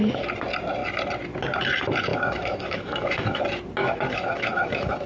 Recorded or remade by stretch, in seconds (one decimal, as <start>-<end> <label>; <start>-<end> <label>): 0.0-2.1 recorded; 2.1-3.4 remade; 3.4-3.8 recorded; 3.8-5.1 remade